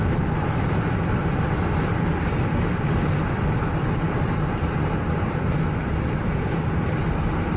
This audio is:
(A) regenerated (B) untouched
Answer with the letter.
B